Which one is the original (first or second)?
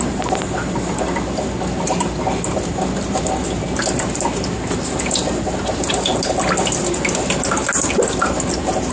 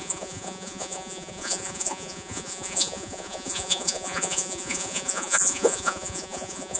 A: first